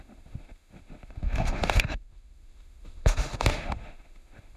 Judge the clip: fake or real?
fake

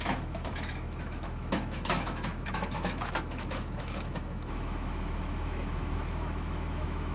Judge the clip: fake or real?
fake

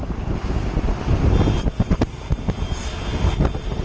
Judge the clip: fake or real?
real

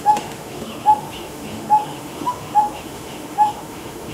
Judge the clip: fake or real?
fake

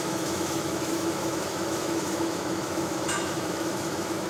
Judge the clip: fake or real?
fake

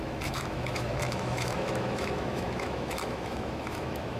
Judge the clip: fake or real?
fake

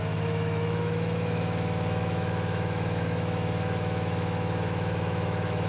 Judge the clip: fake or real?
fake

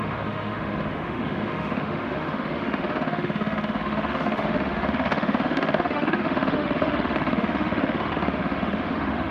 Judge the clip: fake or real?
fake